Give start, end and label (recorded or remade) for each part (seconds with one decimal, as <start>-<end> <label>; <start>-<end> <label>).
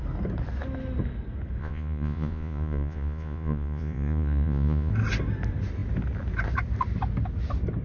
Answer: 0.0-1.6 recorded; 1.6-4.9 remade; 4.9-7.8 recorded